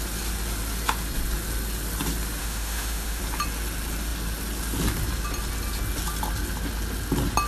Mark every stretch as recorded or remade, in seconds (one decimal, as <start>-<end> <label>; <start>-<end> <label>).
0.0-2.4 recorded; 2.4-3.2 remade; 3.2-7.5 recorded